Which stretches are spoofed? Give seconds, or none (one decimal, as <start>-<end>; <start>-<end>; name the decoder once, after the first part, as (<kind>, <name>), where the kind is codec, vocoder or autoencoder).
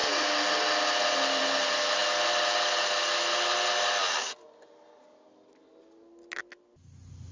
none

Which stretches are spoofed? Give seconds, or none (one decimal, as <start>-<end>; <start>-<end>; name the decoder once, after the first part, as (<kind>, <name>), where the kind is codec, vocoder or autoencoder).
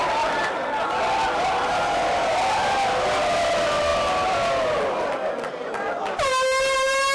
none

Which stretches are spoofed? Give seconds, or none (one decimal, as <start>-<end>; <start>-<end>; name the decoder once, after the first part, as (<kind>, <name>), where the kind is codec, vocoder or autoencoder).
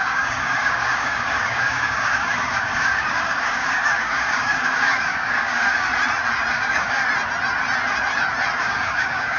0.0-5.9 (codec, DAC); 6.5-7.0; 8.6-9.4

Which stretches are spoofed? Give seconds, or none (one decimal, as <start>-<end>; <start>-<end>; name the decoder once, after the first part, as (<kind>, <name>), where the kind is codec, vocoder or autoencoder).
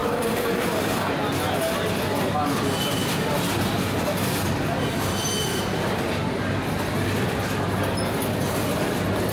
0.0-1.1 (codec, DAC)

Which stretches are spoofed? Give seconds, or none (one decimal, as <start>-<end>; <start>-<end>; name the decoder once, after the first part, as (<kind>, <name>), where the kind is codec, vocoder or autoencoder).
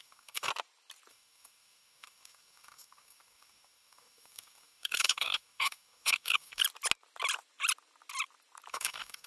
0.0-0.5 (codec, DAC); 1.1-6.6; 8.7-9.3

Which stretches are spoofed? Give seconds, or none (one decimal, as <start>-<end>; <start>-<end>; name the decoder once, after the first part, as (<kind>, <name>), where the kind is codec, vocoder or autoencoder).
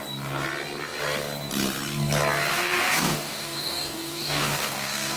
2.5-5.2 (codec, DAC)